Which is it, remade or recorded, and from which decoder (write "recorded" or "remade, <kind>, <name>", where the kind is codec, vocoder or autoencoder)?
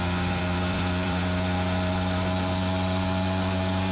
remade, vocoder, BigVGAN v2